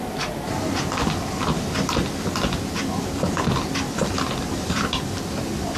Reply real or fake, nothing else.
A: real